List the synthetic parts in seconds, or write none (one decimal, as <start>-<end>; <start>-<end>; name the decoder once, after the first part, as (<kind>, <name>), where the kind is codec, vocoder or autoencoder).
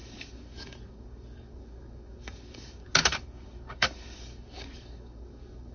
0.0-5.7 (codec, DAC)